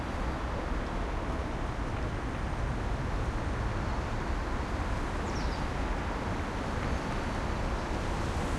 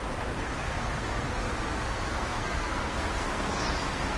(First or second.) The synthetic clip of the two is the second